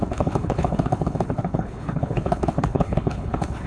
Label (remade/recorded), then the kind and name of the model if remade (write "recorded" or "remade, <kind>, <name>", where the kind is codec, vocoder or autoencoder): remade, codec, HILCodec